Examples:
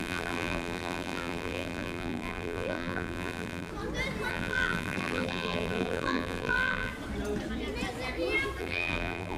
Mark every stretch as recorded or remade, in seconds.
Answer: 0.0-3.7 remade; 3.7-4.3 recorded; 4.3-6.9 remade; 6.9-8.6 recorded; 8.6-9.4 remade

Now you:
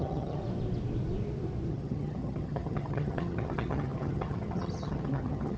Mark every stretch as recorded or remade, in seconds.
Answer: 0.0-0.4 remade; 0.4-1.7 recorded; 1.7-5.6 remade

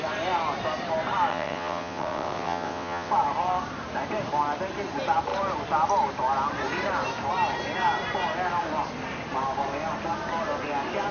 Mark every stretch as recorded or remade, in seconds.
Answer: 0.0-1.3 recorded; 1.3-3.1 remade; 3.1-11.1 recorded